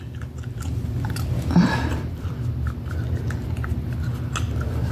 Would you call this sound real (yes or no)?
yes